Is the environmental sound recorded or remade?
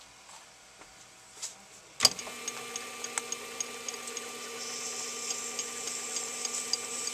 recorded